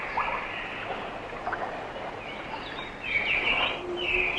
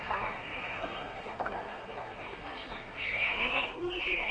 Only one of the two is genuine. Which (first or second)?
first